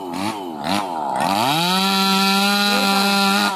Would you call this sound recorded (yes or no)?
yes